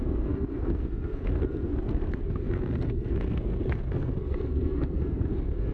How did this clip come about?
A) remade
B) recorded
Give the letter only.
A